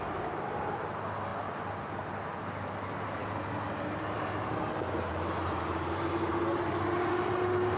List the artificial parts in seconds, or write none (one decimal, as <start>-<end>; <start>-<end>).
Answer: 3.2-4.6; 5.1-6.3